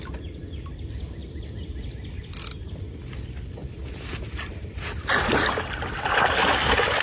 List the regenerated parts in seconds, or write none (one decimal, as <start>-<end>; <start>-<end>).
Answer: none